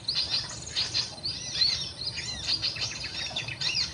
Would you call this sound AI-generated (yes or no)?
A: yes